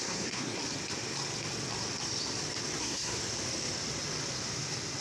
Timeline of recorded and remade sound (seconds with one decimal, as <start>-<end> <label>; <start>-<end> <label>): 0.0-0.6 remade; 0.6-2.8 recorded; 2.8-3.2 remade; 3.2-5.0 recorded